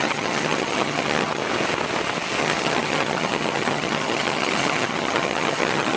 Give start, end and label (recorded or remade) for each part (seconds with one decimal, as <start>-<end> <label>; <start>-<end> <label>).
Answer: 0.0-1.4 remade; 1.4-2.4 recorded; 2.4-6.0 remade